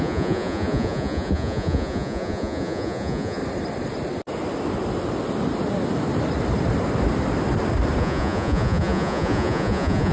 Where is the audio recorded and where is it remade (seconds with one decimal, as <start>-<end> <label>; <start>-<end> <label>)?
0.0-3.4 remade; 3.4-8.0 recorded; 8.0-10.1 remade

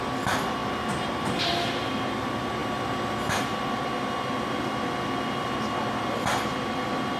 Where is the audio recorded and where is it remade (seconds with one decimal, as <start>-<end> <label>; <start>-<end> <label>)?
0.0-0.6 remade; 0.6-1.2 recorded; 1.2-7.2 remade

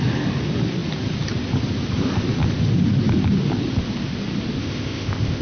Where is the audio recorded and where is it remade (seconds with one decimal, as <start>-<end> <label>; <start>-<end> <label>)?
0.0-4.6 recorded; 4.6-5.4 remade

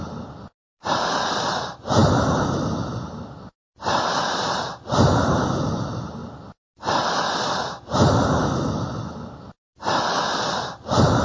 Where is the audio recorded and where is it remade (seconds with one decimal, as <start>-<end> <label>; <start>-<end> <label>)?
0.0-0.9 recorded; 0.9-6.2 remade; 6.2-10.5 recorded; 10.5-11.2 remade

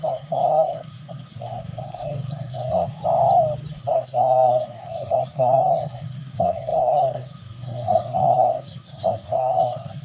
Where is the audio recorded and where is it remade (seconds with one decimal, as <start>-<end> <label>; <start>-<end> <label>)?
0.0-3.0 remade; 3.0-3.7 recorded; 3.7-10.0 remade

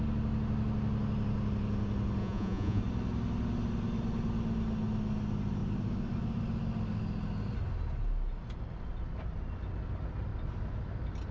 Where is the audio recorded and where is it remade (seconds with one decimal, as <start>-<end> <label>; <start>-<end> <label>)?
0.0-2.2 recorded; 2.2-2.8 remade; 2.8-11.3 recorded

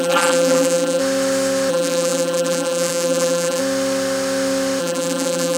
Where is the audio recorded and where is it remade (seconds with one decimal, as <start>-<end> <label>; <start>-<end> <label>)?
0.0-1.0 remade; 1.0-1.7 recorded; 1.7-3.6 remade; 3.6-4.8 recorded; 4.8-5.6 remade